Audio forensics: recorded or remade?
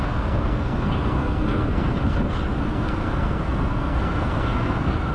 remade